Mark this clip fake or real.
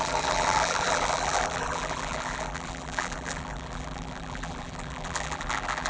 fake